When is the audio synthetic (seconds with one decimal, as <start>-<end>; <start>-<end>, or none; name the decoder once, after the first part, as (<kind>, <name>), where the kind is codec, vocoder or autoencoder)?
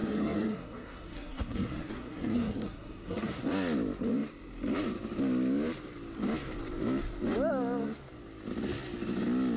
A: 0.0-3.4 (codec, SNAC)